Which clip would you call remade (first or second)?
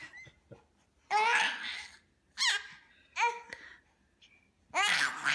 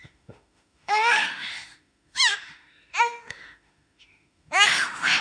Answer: second